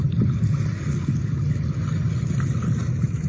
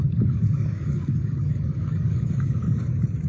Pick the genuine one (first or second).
first